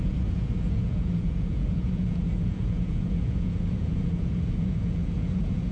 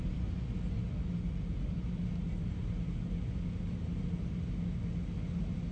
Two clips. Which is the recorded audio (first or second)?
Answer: second